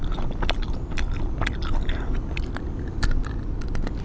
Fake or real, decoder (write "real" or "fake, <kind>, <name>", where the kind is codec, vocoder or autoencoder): real